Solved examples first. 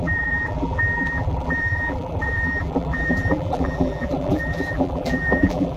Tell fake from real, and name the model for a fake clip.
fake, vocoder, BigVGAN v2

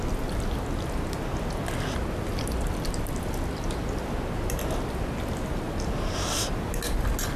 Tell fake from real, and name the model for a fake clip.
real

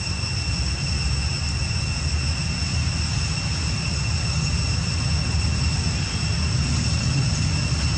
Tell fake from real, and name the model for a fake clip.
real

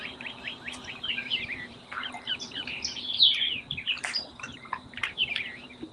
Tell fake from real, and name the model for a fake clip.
fake, vocoder, BigVGAN v2